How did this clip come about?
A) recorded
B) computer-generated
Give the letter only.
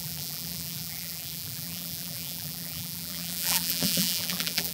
B